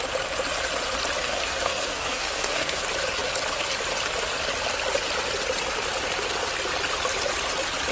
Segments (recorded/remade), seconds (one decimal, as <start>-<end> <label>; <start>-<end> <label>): 0.0-1.2 recorded; 1.2-2.8 remade; 2.8-7.9 recorded